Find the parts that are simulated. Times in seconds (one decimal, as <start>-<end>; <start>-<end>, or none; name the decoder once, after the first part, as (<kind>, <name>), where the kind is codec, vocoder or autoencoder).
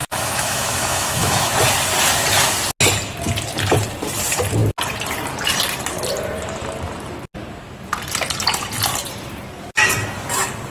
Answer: 0.0-1.5 (autoencoder, DAC-VAE)